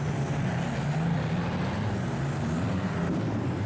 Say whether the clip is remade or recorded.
recorded